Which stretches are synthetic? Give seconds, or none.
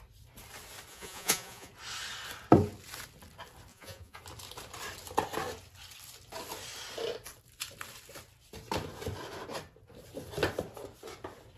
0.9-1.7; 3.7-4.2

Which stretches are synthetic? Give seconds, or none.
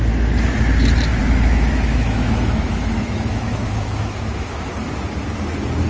1.2-4.7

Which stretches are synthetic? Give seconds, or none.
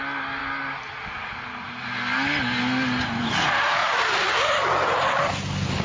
3.8-5.3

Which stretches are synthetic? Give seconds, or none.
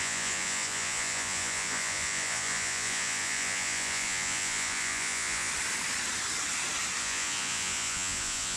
0.0-5.5; 7.0-8.6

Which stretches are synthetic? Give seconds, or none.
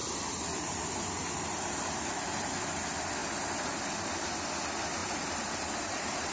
0.0-2.1; 5.0-6.3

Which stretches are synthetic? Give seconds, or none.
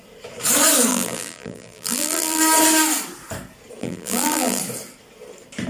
0.9-2.4; 3.8-4.6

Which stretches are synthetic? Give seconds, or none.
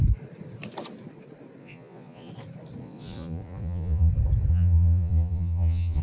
1.6-2.3; 2.8-4.1; 4.5-6.0